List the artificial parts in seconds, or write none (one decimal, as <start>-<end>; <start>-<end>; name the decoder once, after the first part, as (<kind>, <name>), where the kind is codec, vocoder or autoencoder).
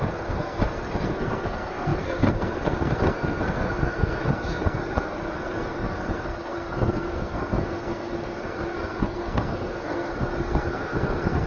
0.0-11.5 (codec, SNAC)